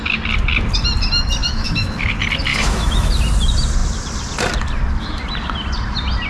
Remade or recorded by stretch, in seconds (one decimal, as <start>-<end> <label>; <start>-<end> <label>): 0.0-1.4 recorded; 1.4-2.1 remade; 2.1-2.5 recorded; 2.5-3.1 remade; 3.1-6.3 recorded